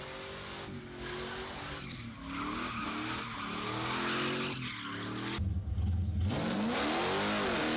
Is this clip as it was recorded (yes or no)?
yes